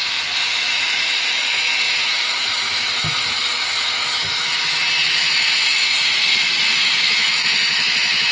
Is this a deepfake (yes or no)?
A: yes